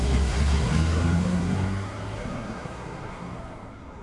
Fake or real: fake